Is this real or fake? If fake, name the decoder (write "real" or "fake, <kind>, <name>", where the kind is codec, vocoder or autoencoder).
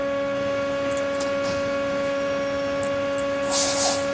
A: real